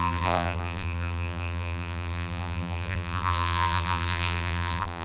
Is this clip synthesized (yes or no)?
yes